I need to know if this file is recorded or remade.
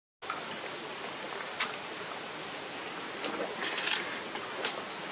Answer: recorded